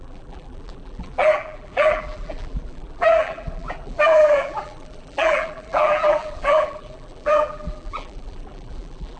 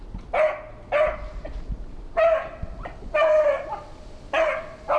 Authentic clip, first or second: second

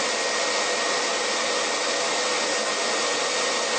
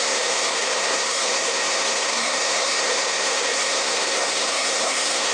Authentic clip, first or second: first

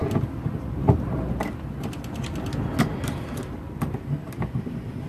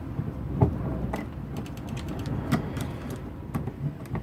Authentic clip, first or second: first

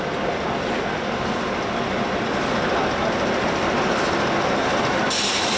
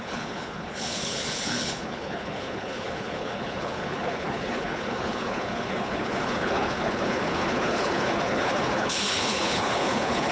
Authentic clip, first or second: first